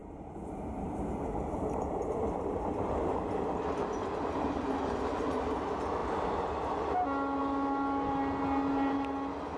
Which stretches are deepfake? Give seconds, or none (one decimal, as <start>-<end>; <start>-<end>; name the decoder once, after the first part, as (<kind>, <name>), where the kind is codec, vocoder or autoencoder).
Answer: 0.0-3.1 (vocoder, BigVGAN v2)

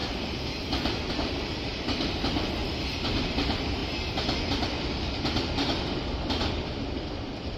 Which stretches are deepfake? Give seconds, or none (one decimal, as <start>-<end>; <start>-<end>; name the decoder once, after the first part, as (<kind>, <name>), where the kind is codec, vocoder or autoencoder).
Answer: 1.1-2.6 (vocoder, BigVGAN v2); 3.2-3.8; 6.5-7.6

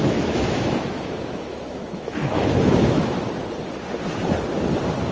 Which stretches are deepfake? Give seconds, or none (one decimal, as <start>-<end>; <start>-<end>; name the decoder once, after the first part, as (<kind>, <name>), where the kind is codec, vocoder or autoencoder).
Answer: 0.0-3.1 (autoencoder, DAC-VAE)

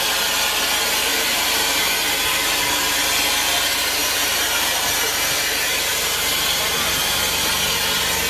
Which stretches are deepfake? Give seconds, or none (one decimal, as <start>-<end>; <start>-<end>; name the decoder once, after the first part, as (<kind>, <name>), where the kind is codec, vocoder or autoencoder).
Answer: 1.1-1.8 (vocoder, BigVGAN v2); 4.0-4.9; 5.9-6.6

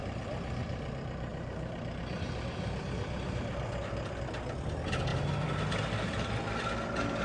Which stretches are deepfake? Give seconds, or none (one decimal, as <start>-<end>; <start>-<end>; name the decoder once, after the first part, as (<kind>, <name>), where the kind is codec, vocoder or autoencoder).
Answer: 1.3-2.0 (vocoder, BigVGAN v2)

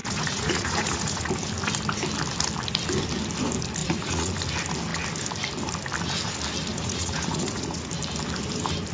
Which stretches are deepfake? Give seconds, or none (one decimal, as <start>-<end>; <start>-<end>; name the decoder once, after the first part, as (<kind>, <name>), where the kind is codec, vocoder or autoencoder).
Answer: 0.0-1.3 (vocoder, Vocos); 3.8-4.3; 6.7-7.9

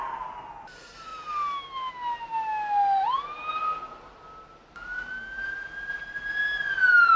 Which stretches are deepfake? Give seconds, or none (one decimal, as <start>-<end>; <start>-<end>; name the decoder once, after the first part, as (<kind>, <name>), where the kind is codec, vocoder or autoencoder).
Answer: none